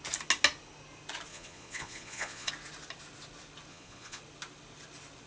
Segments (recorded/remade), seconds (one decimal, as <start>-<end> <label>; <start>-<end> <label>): 0.0-1.3 recorded; 1.3-2.5 remade; 2.5-3.7 recorded; 3.7-4.2 remade; 4.2-5.3 recorded